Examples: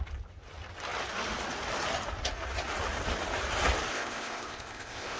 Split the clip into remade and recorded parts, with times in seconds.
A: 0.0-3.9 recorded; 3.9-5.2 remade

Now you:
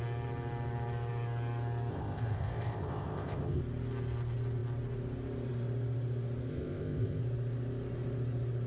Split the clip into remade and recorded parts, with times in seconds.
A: 0.0-1.9 recorded; 1.9-3.6 remade; 3.6-6.5 recorded; 6.5-7.2 remade; 7.2-8.7 recorded

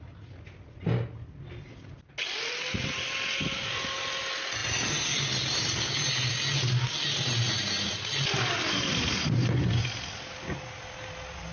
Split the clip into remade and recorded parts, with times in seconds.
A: 0.0-11.5 recorded

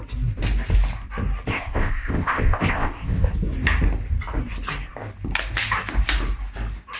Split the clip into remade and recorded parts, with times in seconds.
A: 0.0-1.5 recorded; 1.5-3.3 remade; 3.3-7.0 recorded

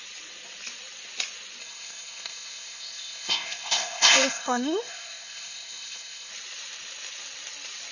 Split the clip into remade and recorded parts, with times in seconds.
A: 0.0-1.6 recorded; 1.6-6.3 remade; 6.3-7.9 recorded

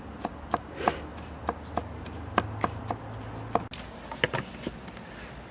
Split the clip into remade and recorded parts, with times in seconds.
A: 0.0-5.5 recorded

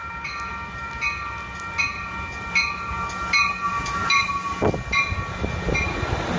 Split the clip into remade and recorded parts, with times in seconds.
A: 0.0-6.4 recorded